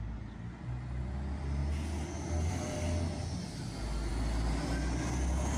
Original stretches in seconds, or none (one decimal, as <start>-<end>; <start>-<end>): 0.0-5.6